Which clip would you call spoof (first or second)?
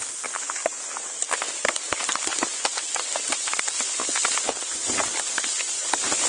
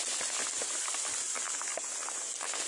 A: second